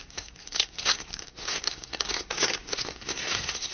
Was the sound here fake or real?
fake